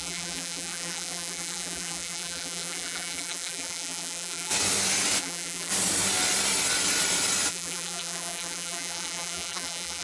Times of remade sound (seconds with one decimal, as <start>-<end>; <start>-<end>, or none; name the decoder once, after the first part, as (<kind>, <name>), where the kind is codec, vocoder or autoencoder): 0.0-4.5 (vocoder, BigVGAN v2); 5.2-5.7; 7.5-10.0